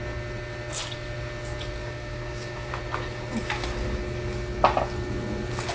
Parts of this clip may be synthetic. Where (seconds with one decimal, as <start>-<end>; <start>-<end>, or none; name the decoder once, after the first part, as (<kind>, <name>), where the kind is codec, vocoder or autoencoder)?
1.8-2.7 (codec, DAC)